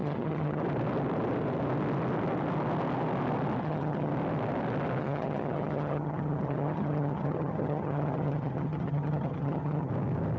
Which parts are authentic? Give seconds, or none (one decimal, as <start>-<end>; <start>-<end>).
0.6-3.6; 4.1-5.0; 9.9-10.4